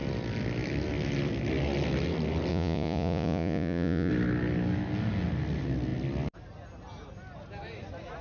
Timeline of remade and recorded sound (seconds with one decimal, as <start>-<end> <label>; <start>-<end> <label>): 0.0-2.5 recorded; 2.5-4.1 remade; 4.1-8.2 recorded